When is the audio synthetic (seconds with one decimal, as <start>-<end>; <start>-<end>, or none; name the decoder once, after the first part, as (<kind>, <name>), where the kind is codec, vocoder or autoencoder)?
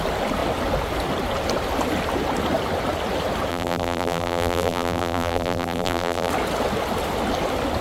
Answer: 3.5-6.3 (vocoder, BigVGAN v2)